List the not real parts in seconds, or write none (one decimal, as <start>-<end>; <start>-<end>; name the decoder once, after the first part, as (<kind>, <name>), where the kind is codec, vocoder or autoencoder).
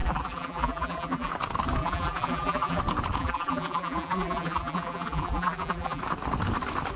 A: 0.0-1.3 (vocoder, BigVGAN v2); 1.8-2.8; 3.2-6.0